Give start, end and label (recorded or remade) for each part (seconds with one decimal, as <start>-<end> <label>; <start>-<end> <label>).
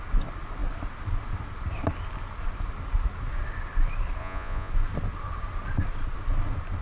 0.0-4.2 recorded; 4.2-4.7 remade; 4.7-6.8 recorded